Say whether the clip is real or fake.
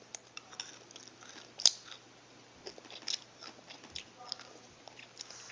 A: real